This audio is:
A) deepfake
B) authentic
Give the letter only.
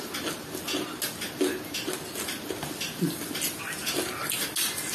B